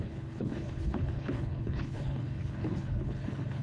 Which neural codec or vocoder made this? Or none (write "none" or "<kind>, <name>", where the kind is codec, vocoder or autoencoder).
codec, HILCodec